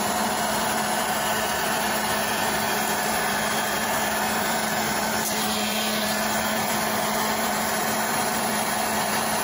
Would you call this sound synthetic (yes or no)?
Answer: yes